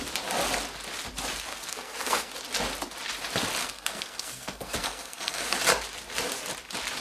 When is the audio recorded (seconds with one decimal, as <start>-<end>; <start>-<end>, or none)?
0.0-1.5; 2.3-3.6; 5.6-7.0

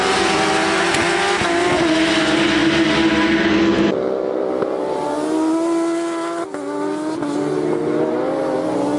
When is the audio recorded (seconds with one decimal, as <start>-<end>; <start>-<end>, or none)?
0.0-9.0

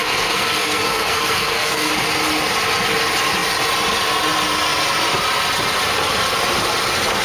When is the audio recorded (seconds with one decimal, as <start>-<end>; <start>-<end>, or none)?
1.9-7.2

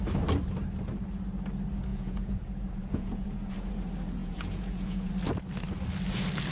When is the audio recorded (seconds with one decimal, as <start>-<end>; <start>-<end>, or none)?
0.0-1.9; 3.7-4.2; 5.1-6.5

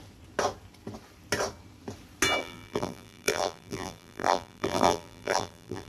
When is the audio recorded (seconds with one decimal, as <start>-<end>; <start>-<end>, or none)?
0.0-2.4

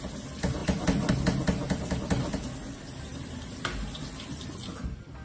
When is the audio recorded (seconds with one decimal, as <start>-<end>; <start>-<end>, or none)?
0.0-5.2

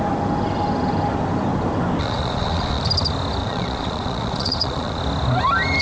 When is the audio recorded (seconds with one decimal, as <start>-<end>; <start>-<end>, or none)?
0.0-2.0; 2.8-3.4; 5.0-5.8

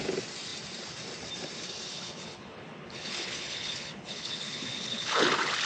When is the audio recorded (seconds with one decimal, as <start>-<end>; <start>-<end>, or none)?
0.0-1.9; 5.3-5.7